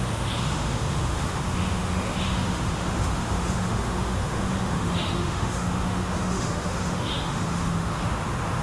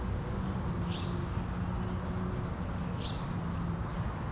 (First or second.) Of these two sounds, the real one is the second